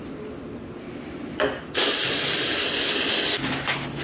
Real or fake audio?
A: real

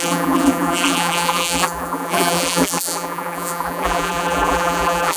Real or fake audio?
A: fake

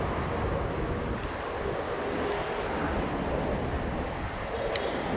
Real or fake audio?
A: real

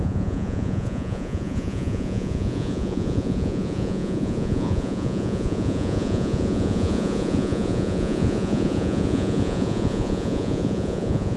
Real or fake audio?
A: fake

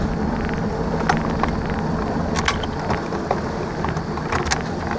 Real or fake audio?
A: real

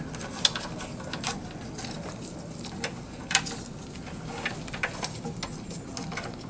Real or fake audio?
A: real